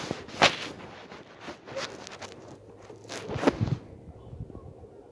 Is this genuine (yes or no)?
yes